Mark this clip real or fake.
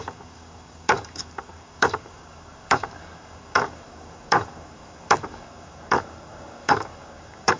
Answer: fake